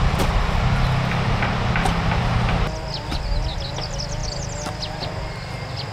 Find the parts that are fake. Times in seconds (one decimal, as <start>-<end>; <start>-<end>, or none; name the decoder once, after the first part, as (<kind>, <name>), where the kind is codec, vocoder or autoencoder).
none

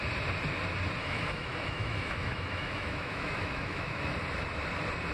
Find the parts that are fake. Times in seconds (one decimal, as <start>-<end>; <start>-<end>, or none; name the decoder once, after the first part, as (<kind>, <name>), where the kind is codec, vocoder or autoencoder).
1.0-4.1 (autoencoder, DAC-VAE)

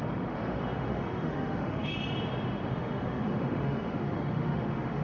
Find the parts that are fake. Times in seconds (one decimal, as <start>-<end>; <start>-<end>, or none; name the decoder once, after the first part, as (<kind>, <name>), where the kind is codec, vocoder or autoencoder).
0.0-1.9 (autoencoder, DAC-VAE); 2.7-5.0